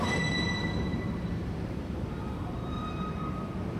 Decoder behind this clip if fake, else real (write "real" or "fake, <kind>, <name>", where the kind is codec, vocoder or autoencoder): fake, vocoder, BigVGAN v2